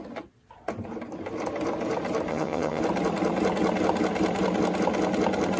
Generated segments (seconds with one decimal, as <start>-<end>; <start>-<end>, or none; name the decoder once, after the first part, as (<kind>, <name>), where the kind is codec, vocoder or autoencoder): 2.3-2.8 (vocoder, HiFi-GAN)